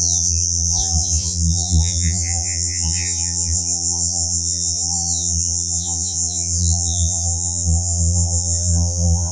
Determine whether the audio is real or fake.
fake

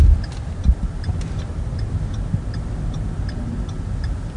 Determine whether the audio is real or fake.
real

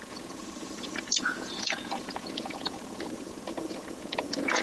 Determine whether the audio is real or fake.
fake